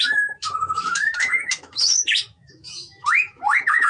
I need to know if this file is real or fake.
fake